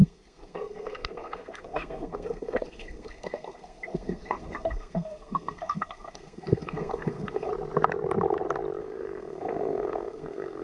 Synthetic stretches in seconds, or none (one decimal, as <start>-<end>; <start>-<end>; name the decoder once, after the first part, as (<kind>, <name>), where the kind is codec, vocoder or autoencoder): 0.0-7.5 (codec, SNAC); 8.8-10.6